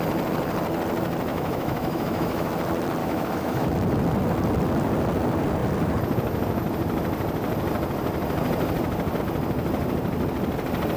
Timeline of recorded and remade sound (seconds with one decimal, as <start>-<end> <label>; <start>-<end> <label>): 0.0-1.3 recorded; 1.3-2.5 remade; 2.5-3.0 recorded; 3.0-3.7 remade; 3.7-11.0 recorded